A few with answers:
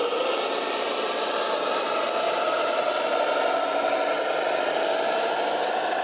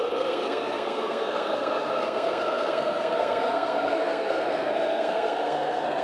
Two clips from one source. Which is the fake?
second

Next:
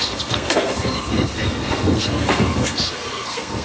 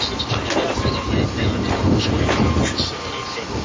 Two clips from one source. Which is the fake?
first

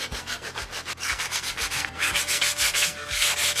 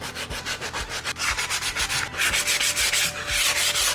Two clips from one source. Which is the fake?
first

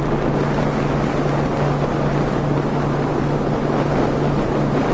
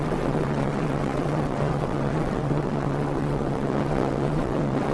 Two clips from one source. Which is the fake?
second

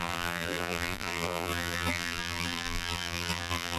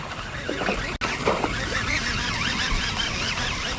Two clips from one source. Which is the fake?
first